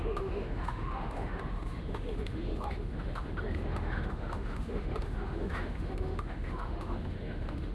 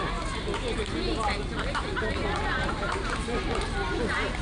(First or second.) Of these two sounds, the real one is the second